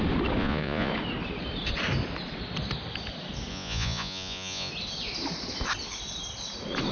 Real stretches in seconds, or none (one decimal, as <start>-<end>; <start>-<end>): 0.0-0.4; 0.9-3.5; 4.7-6.9